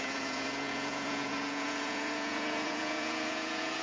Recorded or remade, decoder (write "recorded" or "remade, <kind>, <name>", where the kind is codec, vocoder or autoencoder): remade, vocoder, Vocos